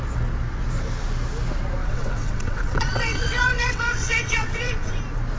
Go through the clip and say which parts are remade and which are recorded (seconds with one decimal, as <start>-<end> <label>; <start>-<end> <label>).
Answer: 0.0-1.8 recorded; 1.8-5.0 remade; 5.0-5.4 recorded